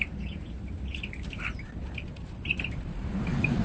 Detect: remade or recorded remade